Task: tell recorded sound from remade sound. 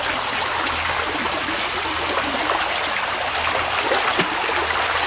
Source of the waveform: recorded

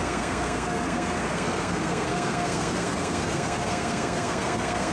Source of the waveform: remade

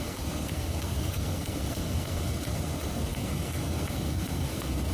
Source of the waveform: remade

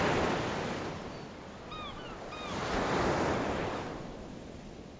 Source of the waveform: recorded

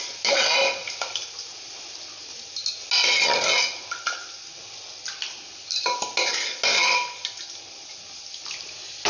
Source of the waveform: recorded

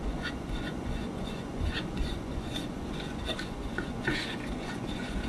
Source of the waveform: remade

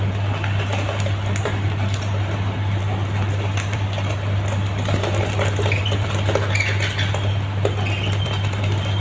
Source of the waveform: remade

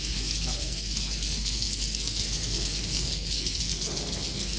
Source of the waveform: remade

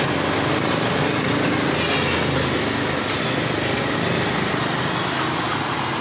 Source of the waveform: recorded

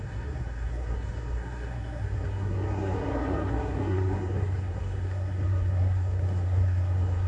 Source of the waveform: remade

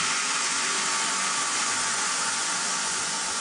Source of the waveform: remade